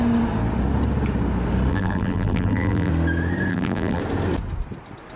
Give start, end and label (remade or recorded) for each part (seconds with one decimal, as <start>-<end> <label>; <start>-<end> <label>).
0.0-1.7 recorded; 1.7-2.9 remade; 2.9-3.5 recorded; 3.5-4.0 remade; 4.0-5.2 recorded